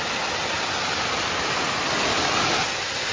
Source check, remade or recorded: recorded